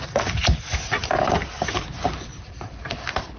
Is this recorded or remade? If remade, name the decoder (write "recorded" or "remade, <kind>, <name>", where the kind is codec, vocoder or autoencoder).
recorded